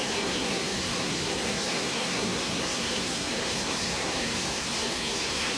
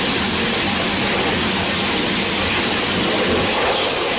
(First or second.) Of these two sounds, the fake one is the first